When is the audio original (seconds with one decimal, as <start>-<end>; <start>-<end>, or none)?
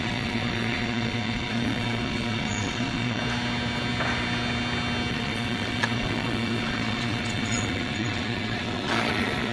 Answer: 3.2-5.1